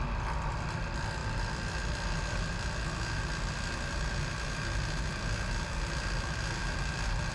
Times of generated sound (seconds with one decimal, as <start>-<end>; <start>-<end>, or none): none